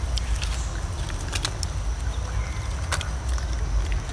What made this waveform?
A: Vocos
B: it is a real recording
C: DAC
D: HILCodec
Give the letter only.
B